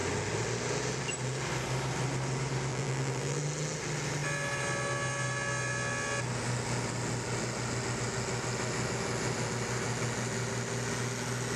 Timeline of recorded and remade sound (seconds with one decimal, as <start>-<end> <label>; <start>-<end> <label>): 0.0-2.7 recorded; 2.7-3.4 remade; 3.4-11.6 recorded